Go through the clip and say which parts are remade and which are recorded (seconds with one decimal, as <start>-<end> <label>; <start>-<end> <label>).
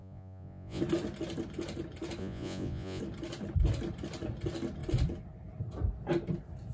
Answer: 0.0-0.8 remade; 0.8-2.2 recorded; 2.2-3.0 remade; 3.0-6.7 recorded